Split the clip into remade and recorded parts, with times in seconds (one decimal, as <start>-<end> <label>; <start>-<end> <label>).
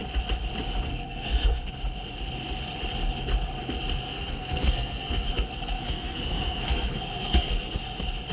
0.0-0.9 recorded; 0.9-1.7 remade; 1.7-4.1 recorded; 4.1-7.8 remade; 7.8-8.3 recorded